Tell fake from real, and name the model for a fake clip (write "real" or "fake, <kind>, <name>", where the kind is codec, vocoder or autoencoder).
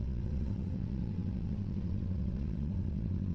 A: fake, vocoder, WaveNeXt